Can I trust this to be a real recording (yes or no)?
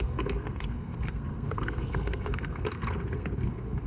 no